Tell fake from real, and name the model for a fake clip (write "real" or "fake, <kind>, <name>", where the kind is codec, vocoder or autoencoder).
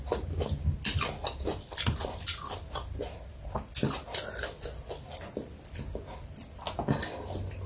real